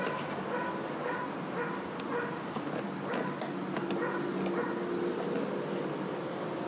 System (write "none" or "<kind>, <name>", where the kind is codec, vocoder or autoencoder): none